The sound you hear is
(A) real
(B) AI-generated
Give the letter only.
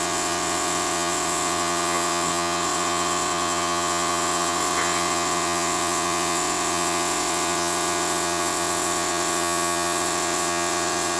B